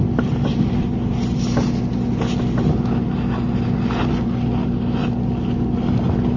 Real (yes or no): yes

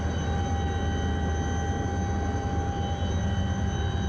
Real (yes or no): yes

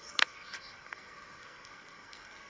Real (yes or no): no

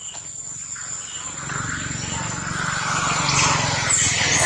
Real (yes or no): yes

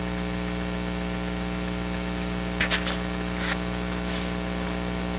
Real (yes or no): yes